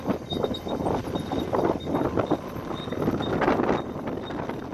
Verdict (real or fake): real